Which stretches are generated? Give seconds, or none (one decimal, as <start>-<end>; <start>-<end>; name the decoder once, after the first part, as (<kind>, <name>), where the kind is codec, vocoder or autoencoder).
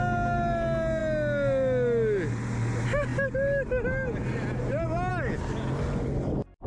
none